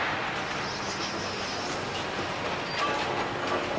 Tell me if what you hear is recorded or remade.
recorded